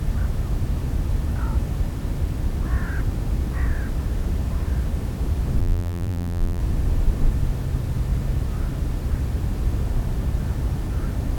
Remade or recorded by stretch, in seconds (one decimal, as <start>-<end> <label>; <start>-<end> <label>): 0.0-5.6 recorded; 5.6-6.6 remade; 6.6-11.4 recorded